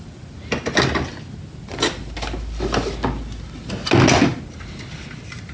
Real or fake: real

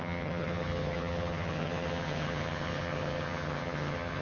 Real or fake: fake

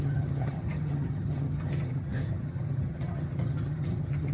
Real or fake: fake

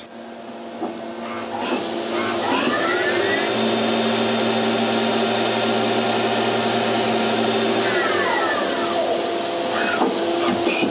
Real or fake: real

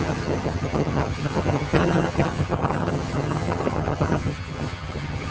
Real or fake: fake